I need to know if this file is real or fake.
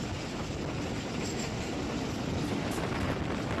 real